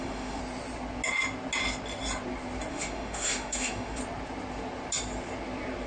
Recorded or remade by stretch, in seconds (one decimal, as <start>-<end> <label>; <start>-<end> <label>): 0.0-0.4 remade; 0.4-2.7 recorded; 2.7-4.0 remade; 4.0-5.9 recorded